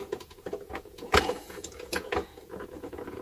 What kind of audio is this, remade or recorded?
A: remade